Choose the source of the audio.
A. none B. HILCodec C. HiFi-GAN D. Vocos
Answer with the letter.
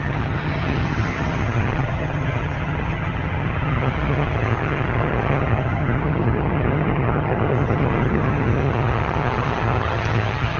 C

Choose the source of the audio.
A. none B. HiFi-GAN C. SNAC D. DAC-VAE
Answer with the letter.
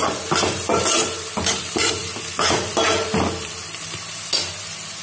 A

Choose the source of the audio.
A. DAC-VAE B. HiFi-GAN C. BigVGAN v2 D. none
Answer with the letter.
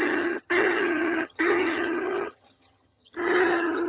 B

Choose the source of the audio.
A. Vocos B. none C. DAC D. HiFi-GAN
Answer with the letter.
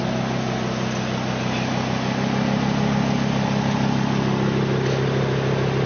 B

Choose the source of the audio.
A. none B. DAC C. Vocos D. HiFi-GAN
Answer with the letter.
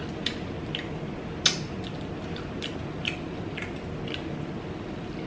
A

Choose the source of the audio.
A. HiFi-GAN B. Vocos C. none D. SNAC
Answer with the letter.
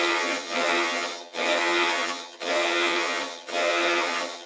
A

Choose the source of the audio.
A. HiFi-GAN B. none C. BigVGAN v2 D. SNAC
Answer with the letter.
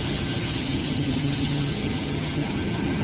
A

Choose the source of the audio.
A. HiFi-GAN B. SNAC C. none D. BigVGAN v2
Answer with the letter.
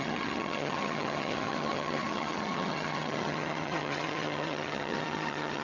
A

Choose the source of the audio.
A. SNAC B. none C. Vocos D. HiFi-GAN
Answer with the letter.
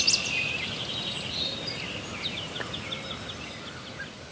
B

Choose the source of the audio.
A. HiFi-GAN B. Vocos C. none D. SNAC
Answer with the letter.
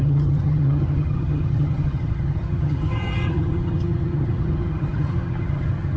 A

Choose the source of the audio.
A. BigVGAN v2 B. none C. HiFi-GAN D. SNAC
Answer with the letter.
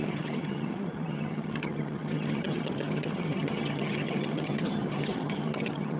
C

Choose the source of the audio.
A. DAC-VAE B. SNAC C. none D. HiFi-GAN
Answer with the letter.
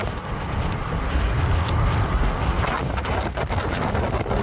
C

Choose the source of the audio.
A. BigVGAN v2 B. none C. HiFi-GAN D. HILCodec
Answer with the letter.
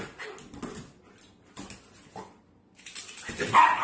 B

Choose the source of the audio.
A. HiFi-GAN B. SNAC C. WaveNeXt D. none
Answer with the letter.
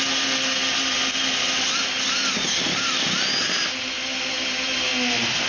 D